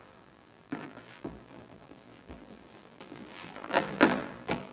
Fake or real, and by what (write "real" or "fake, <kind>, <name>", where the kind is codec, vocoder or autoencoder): fake, vocoder, BigVGAN v2